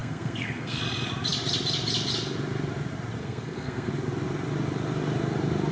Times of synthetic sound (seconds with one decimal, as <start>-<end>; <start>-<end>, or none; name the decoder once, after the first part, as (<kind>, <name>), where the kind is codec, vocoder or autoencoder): 0.0-0.8 (codec, SNAC); 3.2-3.9